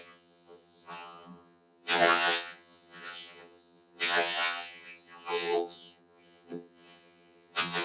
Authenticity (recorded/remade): remade